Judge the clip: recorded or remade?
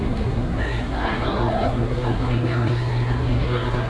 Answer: remade